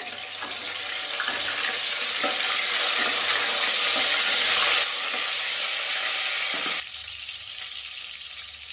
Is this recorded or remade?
recorded